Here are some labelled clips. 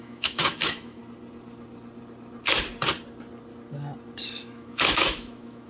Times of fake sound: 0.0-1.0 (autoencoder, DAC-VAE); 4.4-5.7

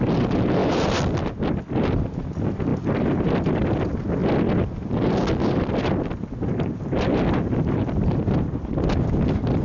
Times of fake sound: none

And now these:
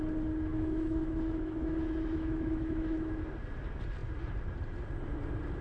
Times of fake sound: 0.5-3.2 (autoencoder, DAC-VAE)

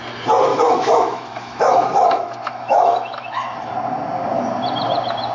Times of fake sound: 0.5-3.7 (autoencoder, DAC-VAE)

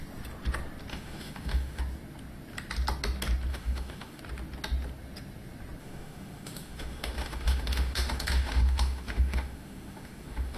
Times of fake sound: 0.9-1.8 (autoencoder, DAC-VAE); 3.5-4.2; 5.8-10.6